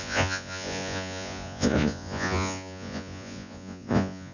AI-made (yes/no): yes